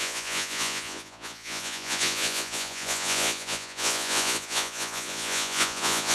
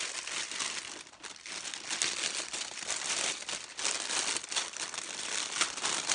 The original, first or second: second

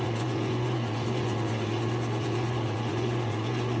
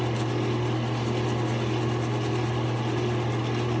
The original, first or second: second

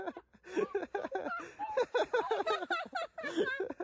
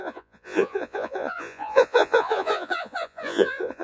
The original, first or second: first